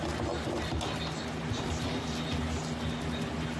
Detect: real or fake real